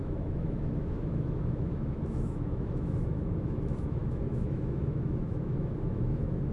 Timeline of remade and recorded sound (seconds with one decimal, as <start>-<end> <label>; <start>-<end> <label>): 0.0-6.5 remade